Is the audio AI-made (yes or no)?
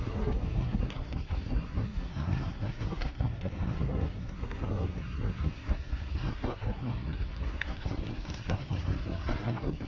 yes